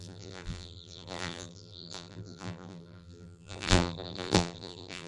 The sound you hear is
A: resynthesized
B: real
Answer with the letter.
A